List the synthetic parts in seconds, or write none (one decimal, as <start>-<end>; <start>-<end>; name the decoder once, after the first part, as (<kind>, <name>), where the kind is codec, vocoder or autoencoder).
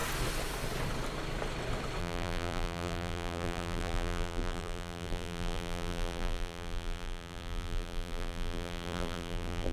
2.0-9.7 (vocoder, BigVGAN v2)